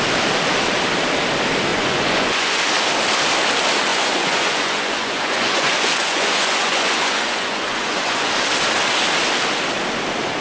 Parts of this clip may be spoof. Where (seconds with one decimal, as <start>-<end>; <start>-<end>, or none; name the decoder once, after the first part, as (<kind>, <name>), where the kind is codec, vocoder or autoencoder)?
1.7-2.6 (vocoder, Vocos); 3.9-8.3